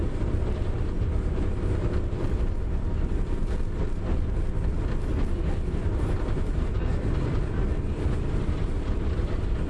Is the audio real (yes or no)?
yes